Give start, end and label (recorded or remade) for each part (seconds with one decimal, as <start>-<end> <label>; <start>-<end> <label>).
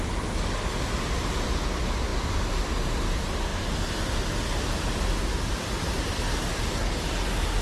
0.0-7.6 recorded